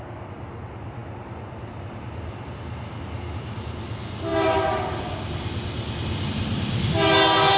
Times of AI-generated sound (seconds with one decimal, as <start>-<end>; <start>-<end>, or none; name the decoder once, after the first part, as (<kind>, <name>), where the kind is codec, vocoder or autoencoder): none